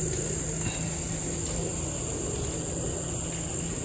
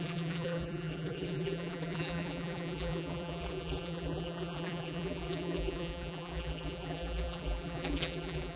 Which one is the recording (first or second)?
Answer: first